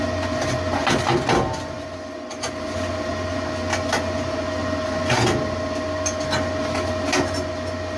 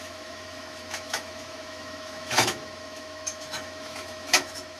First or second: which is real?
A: first